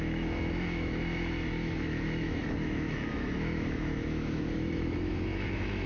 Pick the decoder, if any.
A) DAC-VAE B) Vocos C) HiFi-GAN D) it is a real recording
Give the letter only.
A